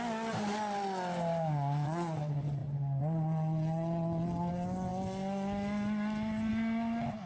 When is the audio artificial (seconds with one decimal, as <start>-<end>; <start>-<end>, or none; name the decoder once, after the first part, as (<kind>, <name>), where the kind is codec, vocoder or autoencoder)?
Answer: none